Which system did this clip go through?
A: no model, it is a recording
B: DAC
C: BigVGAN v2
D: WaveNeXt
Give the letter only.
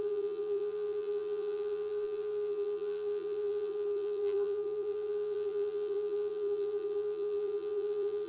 C